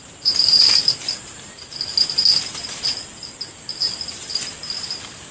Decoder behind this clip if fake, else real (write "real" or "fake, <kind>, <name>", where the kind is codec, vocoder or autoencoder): real